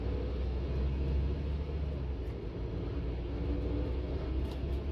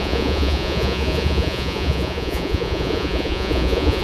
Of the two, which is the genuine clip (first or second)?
first